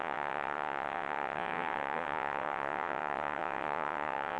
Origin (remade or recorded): remade